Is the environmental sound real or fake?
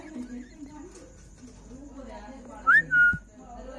real